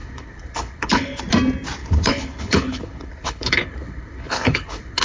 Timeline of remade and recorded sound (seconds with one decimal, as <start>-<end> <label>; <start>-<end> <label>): 0.0-1.2 remade; 1.2-1.8 recorded; 1.8-5.0 remade